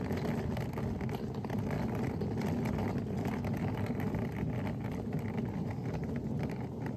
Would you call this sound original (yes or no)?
yes